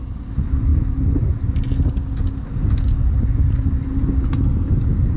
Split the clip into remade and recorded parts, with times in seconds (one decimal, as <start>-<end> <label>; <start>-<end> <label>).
0.0-5.2 recorded